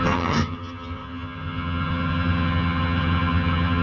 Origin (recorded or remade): remade